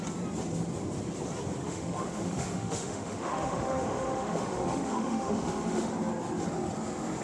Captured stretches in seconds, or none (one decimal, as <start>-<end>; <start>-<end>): 0.0-1.6; 5.9-7.2